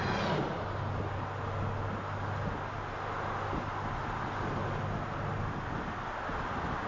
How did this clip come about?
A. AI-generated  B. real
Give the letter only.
B